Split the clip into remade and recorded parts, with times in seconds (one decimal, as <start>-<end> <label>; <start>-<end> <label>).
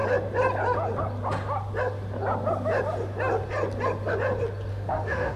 0.0-4.7 recorded; 4.7-5.4 remade